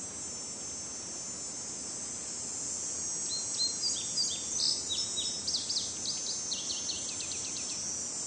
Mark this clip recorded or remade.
recorded